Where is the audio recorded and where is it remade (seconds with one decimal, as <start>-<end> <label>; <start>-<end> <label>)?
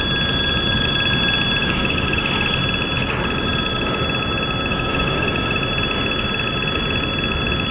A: 0.0-1.6 recorded; 1.6-2.2 remade; 2.2-4.7 recorded; 4.7-5.6 remade; 5.6-7.7 recorded